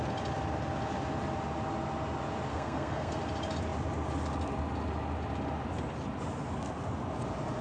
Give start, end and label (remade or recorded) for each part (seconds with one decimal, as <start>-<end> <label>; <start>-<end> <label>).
0.0-2.5 recorded; 2.5-3.2 remade; 3.2-7.6 recorded